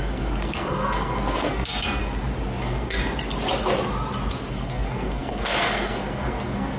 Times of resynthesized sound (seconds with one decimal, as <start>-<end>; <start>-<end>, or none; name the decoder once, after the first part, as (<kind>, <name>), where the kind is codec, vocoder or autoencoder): 0.0-2.0 (codec, SNAC); 2.6-3.0; 4.5-6.8